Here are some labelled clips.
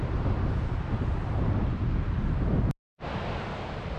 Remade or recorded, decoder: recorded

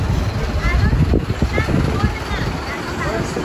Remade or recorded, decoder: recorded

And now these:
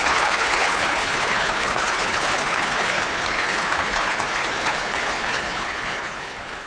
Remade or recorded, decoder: remade, codec, HILCodec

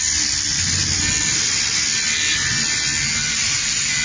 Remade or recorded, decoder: recorded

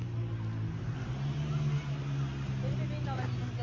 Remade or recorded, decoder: recorded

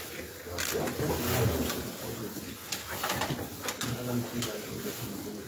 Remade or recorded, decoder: recorded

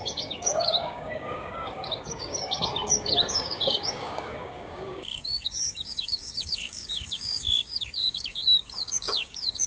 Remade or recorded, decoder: remade, codec, DAC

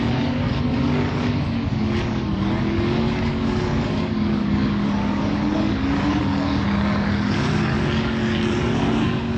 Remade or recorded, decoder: remade, codec, DAC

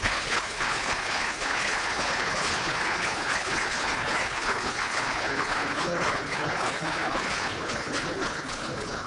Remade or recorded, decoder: remade, codec, HILCodec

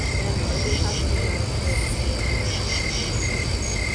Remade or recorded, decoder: recorded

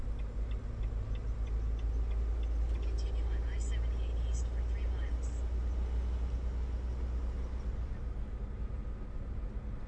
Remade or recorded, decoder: recorded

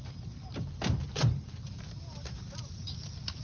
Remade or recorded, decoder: remade, vocoder, BigVGAN v2